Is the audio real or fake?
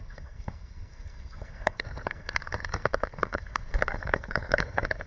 fake